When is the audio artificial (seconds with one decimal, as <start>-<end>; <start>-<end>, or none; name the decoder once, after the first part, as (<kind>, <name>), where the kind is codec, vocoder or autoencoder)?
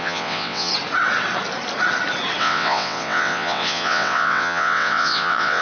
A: 0.0-0.7 (vocoder, WaveNeXt); 2.4-5.6